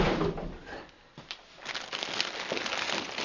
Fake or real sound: real